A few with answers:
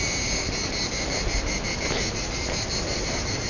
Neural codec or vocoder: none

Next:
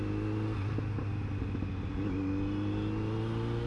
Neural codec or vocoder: none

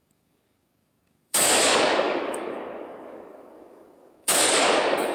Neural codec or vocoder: codec, DAC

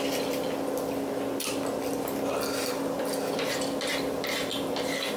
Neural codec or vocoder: none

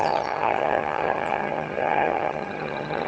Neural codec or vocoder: vocoder, HiFi-GAN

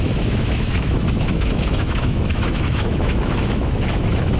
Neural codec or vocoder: autoencoder, DAC-VAE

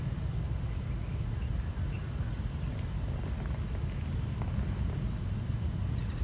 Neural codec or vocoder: none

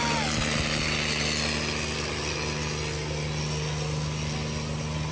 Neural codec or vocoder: none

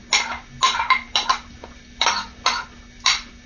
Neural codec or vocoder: none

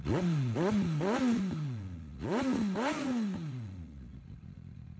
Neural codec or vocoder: vocoder, Vocos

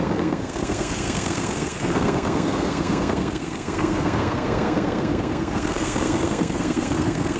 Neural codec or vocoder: codec, SNAC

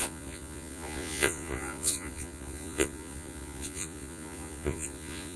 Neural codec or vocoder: vocoder, Vocos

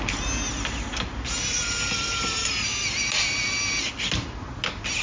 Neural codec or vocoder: none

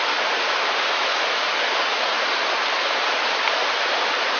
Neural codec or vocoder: none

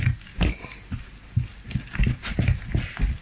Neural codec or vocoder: none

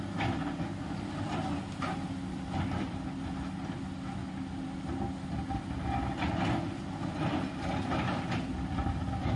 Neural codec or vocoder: none